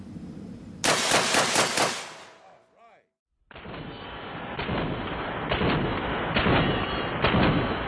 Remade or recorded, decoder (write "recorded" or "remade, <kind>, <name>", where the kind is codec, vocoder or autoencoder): recorded